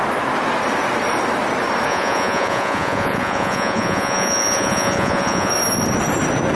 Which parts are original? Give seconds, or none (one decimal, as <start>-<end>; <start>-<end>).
0.0-1.9; 5.5-6.5